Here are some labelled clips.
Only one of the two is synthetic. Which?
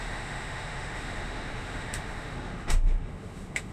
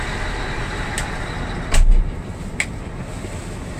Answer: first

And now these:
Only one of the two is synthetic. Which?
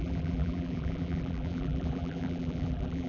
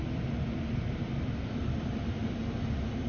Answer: first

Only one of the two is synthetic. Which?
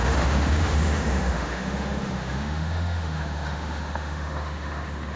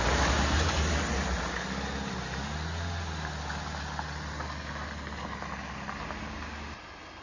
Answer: first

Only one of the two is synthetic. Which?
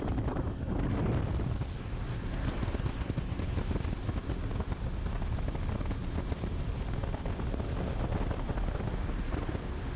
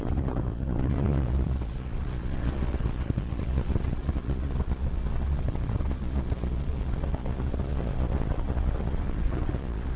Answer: second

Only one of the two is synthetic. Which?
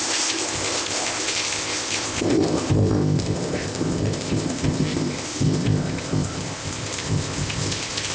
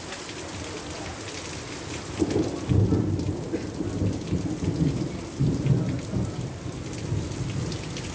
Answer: first